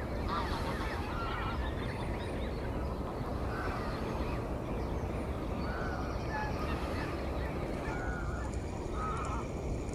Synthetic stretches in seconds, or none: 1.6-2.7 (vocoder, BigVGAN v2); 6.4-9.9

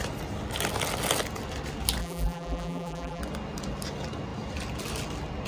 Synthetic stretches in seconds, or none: 2.0-3.2 (vocoder, BigVGAN v2)

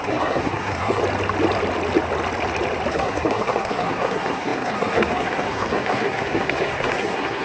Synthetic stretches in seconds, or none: 0.0-1.0 (codec, SNAC); 2.9-7.4

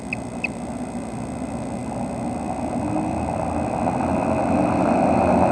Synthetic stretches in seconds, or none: none

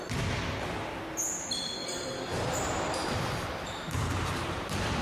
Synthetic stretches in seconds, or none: 1.8-5.0 (vocoder, BigVGAN v2)

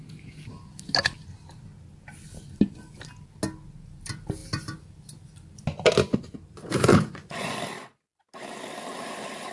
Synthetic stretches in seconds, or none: 6.9-7.6 (vocoder, Vocos)